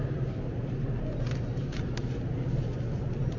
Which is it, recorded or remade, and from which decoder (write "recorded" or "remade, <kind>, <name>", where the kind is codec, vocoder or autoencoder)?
recorded